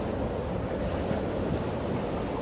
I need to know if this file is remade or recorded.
recorded